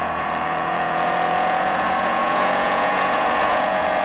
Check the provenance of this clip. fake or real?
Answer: fake